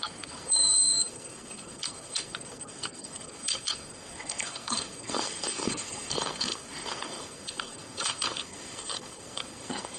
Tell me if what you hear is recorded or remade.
remade